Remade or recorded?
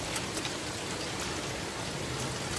recorded